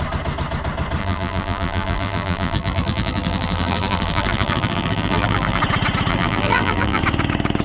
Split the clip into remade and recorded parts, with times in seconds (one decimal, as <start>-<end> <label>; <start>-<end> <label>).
0.0-1.0 recorded; 1.0-5.6 remade; 5.6-6.1 recorded; 6.1-7.0 remade; 7.0-7.6 recorded